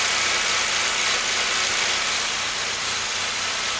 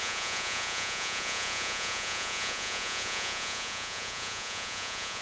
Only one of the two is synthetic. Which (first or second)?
second